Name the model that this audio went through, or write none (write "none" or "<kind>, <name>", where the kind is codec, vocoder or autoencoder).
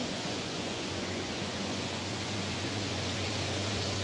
vocoder, Vocos